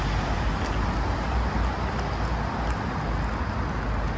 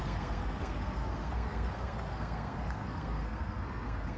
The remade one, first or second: second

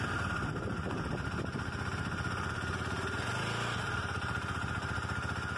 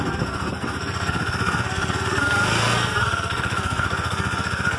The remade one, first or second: second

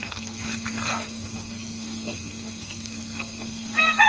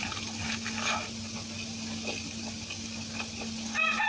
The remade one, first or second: first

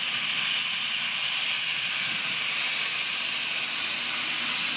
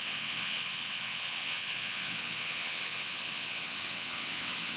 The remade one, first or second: second